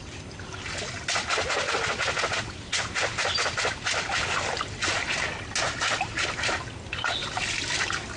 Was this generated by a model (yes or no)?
no